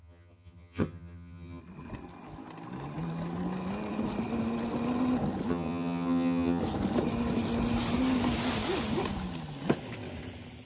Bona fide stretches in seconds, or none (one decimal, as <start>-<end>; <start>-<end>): 1.6-5.5; 6.6-10.7